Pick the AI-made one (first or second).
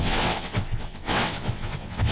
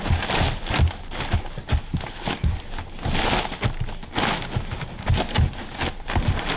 first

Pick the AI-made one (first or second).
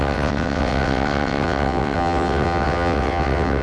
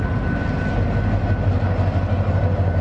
first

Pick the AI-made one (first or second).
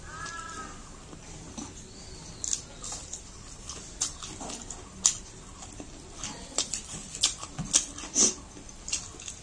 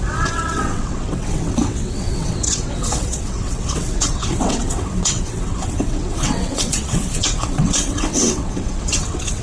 second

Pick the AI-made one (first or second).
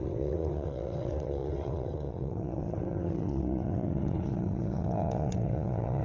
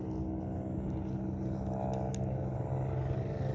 first